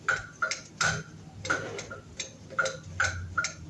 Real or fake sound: real